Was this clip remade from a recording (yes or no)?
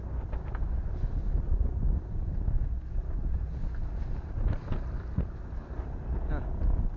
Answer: no